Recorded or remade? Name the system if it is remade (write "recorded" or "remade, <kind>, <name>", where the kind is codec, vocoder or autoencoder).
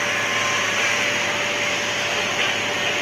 recorded